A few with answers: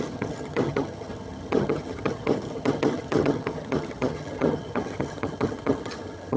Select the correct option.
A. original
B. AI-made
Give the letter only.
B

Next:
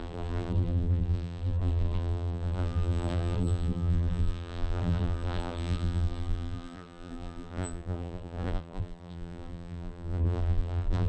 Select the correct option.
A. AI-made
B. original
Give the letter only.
A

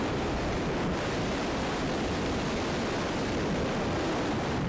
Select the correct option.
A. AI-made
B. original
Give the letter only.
A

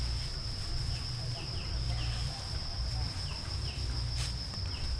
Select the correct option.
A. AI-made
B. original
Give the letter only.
B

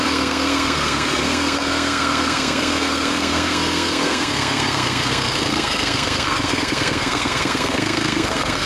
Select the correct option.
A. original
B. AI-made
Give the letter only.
B